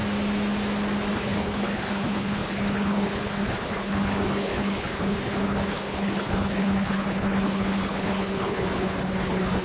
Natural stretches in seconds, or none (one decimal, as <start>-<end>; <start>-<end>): 0.0-1.1